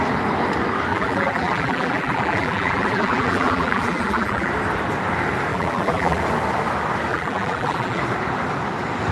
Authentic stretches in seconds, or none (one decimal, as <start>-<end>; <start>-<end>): 0.0-0.9; 4.5-5.5; 6.2-7.1; 8.0-9.1